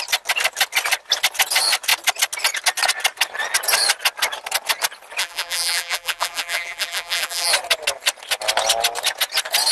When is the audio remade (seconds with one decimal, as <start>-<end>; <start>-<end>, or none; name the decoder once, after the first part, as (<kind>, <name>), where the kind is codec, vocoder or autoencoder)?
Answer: 5.2-7.5 (vocoder, BigVGAN v2)